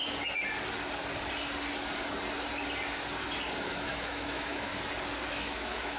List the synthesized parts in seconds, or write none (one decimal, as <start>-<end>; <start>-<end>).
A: 3.6-4.7; 5.3-6.0